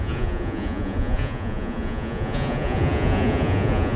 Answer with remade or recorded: remade